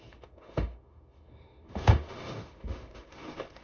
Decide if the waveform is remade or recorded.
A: remade